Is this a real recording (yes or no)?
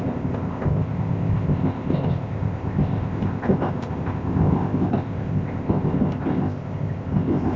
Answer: no